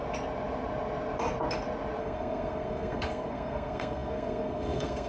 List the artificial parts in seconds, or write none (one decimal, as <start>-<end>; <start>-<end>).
2.0-5.1